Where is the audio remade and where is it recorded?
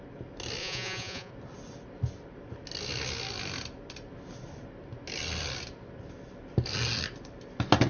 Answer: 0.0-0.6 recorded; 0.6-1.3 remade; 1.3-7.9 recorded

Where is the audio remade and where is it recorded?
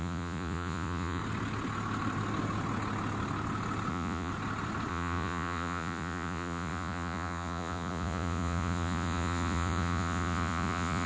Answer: 0.0-1.2 remade; 1.2-3.9 recorded; 3.9-4.3 remade; 4.3-4.9 recorded; 4.9-11.1 remade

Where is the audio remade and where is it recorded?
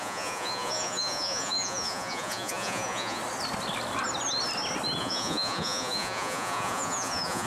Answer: 0.0-3.2 remade; 3.2-5.0 recorded; 5.0-7.5 remade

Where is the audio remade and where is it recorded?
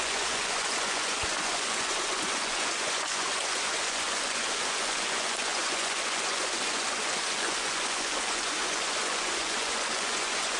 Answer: 0.0-10.6 remade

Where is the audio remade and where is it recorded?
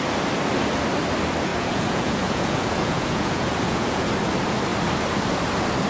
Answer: 0.0-1.5 recorded; 1.5-4.1 remade; 4.1-5.9 recorded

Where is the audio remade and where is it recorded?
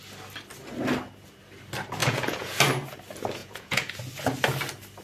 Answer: 0.0-2.0 recorded; 2.0-2.6 remade; 2.6-3.4 recorded; 3.4-4.0 remade; 4.0-5.0 recorded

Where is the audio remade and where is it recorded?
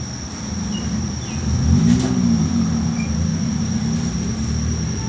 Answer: 0.0-3.3 recorded; 3.3-3.8 remade; 3.8-5.1 recorded